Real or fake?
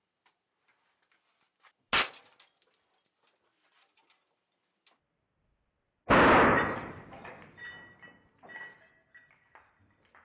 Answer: real